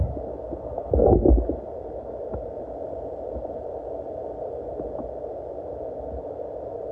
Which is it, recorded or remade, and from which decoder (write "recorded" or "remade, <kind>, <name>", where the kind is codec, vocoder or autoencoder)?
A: recorded